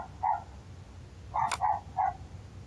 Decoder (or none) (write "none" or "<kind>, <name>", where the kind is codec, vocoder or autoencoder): none